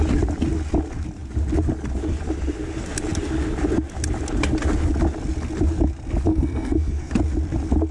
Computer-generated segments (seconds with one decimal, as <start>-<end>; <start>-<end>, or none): 6.3-7.1